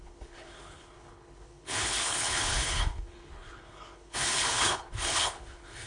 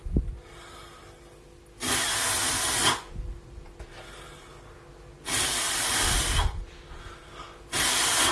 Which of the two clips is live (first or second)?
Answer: second